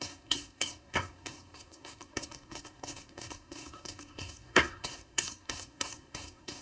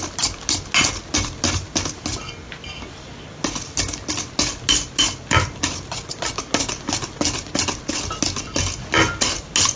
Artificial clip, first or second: first